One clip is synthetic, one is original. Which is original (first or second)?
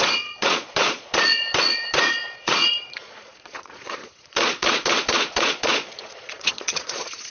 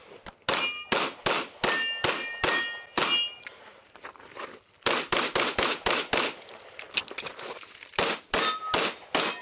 second